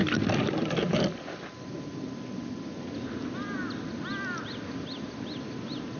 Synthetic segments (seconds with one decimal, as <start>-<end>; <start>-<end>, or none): none